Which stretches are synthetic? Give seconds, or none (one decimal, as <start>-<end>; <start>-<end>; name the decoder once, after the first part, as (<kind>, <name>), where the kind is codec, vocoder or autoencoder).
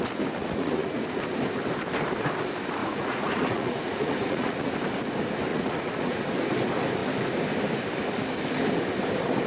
0.4-1.0 (vocoder, Vocos); 2.8-4.7; 5.5-6.2